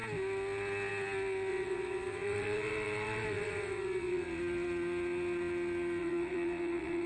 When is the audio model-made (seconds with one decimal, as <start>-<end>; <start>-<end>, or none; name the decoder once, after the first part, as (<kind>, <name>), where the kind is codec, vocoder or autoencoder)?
1.5-4.4 (vocoder, WaveNeXt); 6.0-7.1